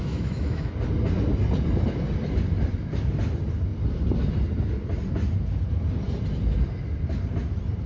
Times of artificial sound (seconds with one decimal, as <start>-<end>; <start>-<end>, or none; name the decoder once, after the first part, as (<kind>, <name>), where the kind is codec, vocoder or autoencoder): 0.0-0.7 (autoencoder, DAC-VAE)